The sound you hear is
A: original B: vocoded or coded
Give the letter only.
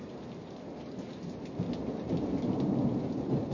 A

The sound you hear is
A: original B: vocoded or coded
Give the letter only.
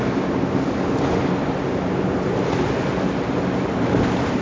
A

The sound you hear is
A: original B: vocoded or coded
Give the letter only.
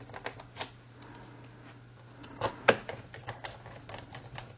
A